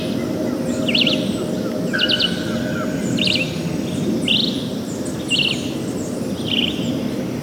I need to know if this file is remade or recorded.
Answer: recorded